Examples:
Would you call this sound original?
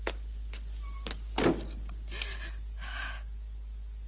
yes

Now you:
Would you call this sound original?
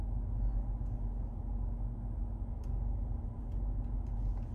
yes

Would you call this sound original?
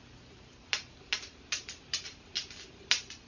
yes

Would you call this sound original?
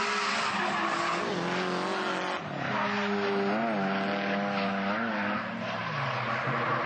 yes